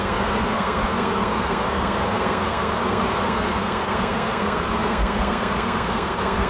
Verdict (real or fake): fake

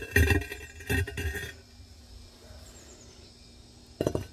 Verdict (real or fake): real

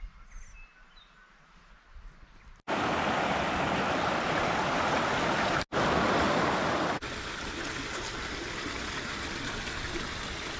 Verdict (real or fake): real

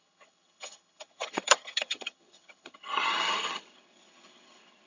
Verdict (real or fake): fake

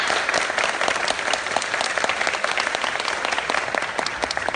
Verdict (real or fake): real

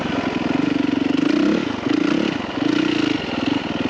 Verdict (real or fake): real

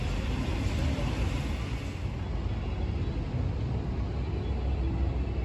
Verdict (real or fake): real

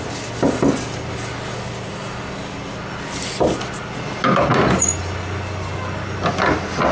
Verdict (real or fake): real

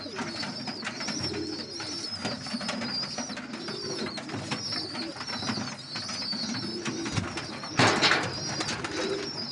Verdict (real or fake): real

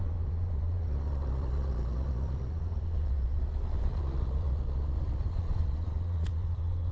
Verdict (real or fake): fake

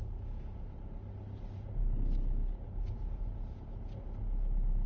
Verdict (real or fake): real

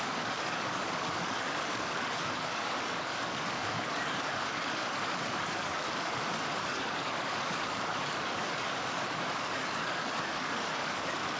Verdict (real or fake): fake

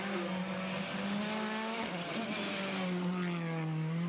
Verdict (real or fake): real